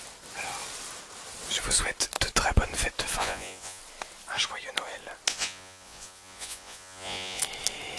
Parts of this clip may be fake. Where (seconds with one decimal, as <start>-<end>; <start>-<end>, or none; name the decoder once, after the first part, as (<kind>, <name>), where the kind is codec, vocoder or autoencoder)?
3.2-3.8 (vocoder, Vocos); 5.3-7.4